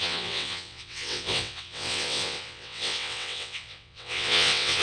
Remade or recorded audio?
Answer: remade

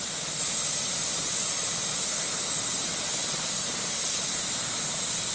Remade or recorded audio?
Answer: remade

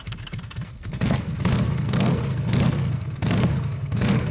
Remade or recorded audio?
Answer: remade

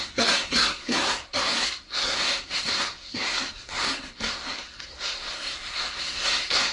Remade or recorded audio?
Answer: remade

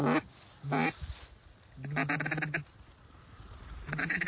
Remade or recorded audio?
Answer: recorded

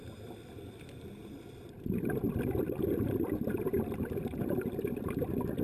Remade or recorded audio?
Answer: recorded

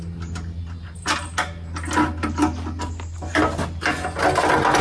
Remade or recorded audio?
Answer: recorded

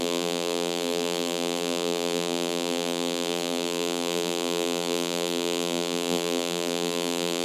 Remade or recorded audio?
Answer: remade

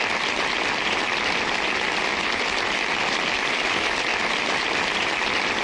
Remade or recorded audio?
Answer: recorded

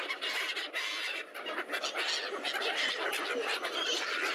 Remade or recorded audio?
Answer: recorded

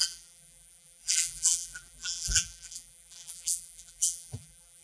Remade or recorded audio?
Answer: remade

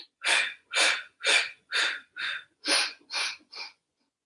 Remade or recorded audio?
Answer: remade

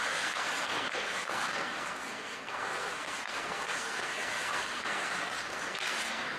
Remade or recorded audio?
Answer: remade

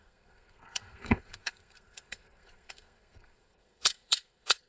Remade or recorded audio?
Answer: remade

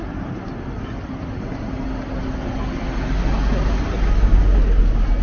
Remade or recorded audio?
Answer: recorded